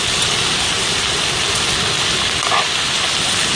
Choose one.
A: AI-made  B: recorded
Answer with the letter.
B